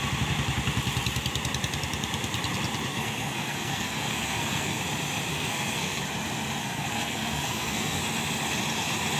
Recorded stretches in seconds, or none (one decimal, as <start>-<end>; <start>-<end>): 0.0-2.9; 4.8-5.3; 6.0-6.6; 8.0-9.2